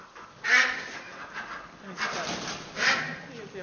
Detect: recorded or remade recorded